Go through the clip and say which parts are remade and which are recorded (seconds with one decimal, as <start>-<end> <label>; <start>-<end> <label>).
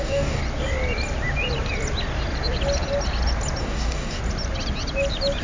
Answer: 0.0-0.4 remade; 0.4-3.6 recorded; 3.6-4.2 remade; 4.2-5.4 recorded